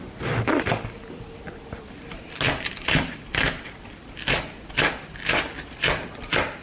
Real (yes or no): yes